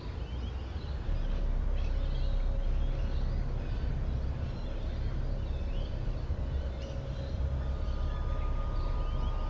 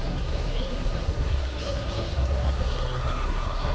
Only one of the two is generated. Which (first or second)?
second